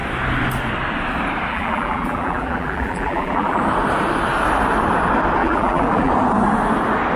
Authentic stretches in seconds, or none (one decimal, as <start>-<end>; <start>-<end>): 0.0-1.5; 3.6-5.4; 6.1-7.2